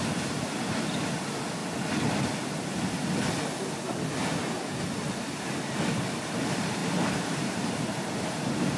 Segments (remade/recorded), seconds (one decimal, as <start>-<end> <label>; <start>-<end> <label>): 0.0-4.2 recorded; 4.2-4.8 remade; 4.8-6.8 recorded; 6.8-8.8 remade